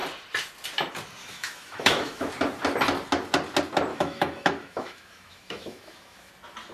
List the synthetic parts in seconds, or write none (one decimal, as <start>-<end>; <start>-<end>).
1.2-2.3; 3.9-6.3